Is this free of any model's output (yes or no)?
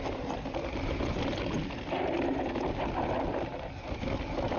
yes